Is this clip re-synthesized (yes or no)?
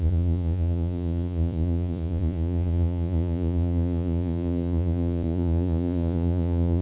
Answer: yes